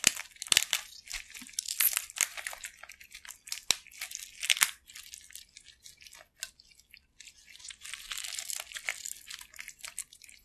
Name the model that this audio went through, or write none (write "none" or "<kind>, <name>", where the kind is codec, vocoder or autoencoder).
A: none